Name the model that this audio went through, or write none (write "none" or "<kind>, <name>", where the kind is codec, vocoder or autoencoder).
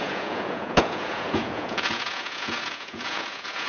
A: vocoder, Vocos